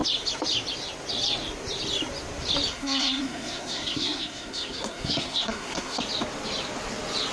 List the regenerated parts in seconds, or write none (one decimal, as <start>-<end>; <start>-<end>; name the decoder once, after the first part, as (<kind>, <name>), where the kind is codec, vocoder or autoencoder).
2.7-6.0 (codec, SNAC)